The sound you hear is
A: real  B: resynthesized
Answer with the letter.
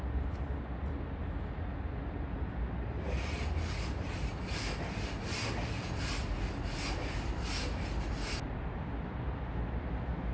A